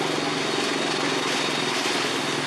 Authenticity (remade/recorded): recorded